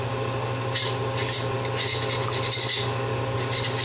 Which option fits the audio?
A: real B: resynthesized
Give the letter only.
A